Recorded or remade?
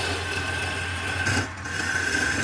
recorded